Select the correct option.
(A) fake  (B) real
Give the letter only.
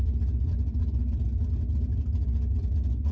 B